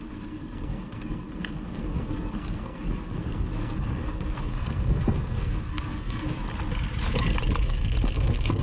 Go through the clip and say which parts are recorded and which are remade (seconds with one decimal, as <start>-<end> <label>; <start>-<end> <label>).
0.0-6.4 remade; 6.4-7.6 recorded; 7.6-8.6 remade